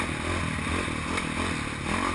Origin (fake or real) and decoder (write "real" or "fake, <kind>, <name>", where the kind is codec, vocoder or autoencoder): real